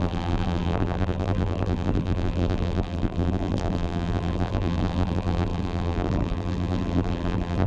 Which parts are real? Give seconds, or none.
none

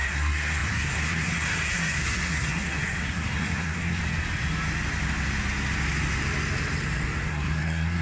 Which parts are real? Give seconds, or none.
4.0-7.3

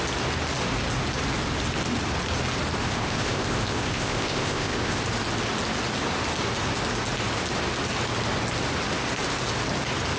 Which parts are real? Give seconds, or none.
0.0-2.8; 5.0-10.2

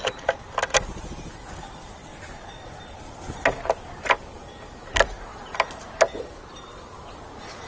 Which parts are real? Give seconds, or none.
0.0-7.7

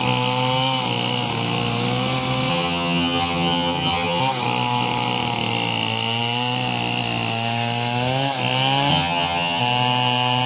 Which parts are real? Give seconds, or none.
0.0-2.5; 4.2-8.9; 9.6-10.5

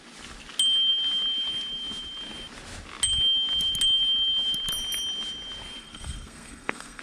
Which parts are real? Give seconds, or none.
0.0-5.8

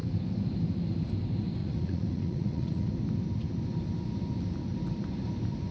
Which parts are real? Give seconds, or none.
0.0-1.6; 2.9-5.7

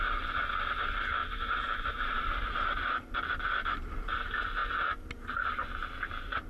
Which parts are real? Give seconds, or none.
0.0-1.2; 2.8-6.5